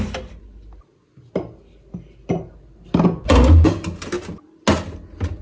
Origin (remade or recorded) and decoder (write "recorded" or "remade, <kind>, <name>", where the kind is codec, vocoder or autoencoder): recorded